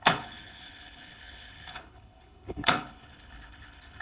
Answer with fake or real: fake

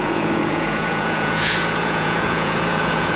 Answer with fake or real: fake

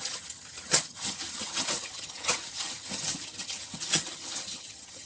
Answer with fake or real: fake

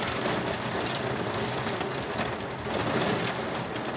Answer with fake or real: real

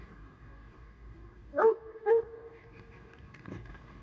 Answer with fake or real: fake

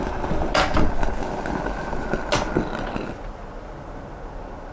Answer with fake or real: real